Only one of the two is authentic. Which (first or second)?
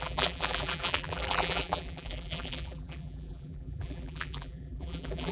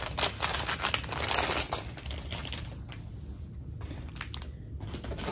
second